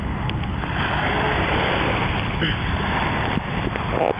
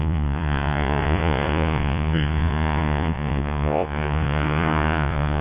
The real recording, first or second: first